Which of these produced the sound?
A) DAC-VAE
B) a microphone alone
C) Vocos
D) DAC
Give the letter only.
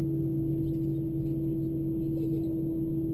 B